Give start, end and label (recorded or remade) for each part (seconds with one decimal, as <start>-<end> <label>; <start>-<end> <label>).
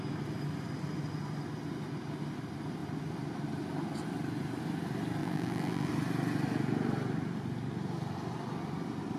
0.0-5.2 recorded; 5.2-5.9 remade; 5.9-9.2 recorded